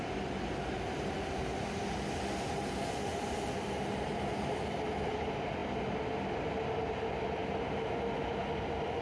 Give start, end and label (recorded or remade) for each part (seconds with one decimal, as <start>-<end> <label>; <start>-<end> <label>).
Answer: 0.0-9.0 recorded